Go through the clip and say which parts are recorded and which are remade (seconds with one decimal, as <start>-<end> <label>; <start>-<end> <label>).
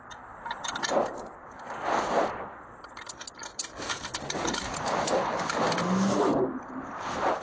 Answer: 0.0-7.4 recorded